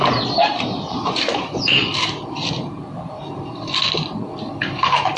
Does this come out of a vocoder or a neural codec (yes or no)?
yes